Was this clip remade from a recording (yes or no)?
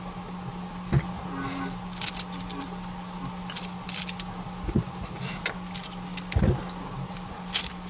no